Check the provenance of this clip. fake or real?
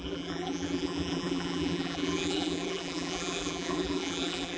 fake